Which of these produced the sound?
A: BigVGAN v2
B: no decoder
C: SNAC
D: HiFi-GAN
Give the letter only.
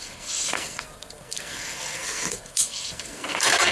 C